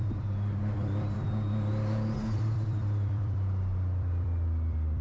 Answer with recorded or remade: remade